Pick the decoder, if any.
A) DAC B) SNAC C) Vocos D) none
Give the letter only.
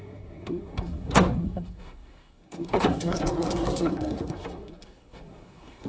B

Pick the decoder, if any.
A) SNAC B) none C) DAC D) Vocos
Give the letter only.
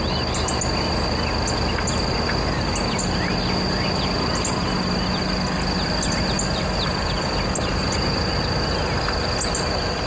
B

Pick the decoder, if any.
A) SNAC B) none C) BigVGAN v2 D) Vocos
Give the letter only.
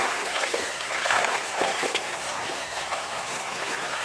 A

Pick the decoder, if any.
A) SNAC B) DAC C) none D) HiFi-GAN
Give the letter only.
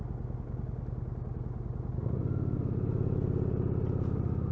C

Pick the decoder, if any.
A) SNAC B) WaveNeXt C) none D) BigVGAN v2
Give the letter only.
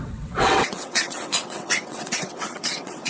B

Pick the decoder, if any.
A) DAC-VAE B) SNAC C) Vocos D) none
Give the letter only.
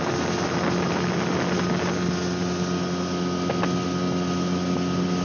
D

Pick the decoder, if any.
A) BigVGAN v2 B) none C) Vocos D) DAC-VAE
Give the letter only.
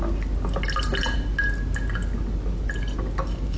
B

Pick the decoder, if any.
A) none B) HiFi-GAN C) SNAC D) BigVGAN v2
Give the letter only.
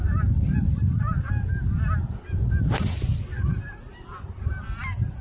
A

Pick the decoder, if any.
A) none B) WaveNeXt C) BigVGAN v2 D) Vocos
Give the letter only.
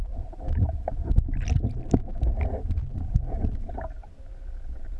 C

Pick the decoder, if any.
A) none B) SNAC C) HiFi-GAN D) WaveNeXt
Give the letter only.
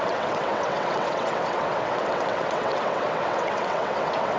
D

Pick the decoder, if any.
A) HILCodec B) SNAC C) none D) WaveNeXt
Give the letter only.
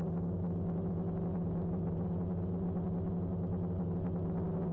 C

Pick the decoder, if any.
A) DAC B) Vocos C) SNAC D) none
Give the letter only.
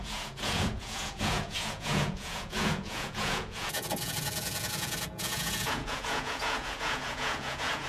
B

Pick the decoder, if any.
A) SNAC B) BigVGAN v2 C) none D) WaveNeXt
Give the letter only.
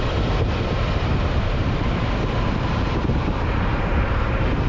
B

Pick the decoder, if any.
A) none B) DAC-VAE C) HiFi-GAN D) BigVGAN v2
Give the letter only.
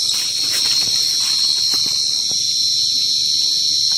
A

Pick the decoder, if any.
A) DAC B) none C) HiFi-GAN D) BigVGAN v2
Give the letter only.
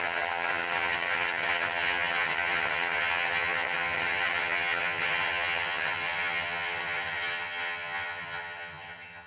C